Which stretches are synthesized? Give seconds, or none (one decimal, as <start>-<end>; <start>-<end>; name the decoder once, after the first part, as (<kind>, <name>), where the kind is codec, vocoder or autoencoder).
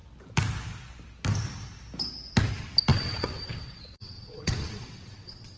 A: 2.9-5.6 (vocoder, WaveNeXt)